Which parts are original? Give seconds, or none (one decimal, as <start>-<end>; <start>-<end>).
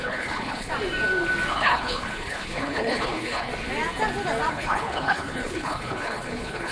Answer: 0.7-1.5; 3.5-4.5